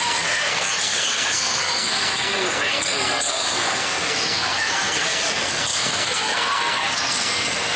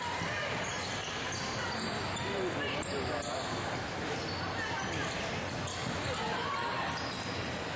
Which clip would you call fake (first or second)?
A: first